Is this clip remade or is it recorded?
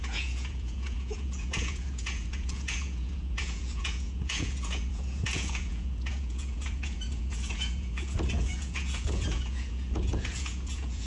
remade